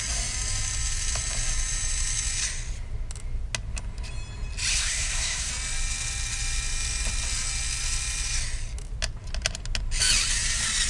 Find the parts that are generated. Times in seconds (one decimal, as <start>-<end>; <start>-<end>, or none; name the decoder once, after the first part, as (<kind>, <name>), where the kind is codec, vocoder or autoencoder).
4.7-5.5 (codec, SNAC)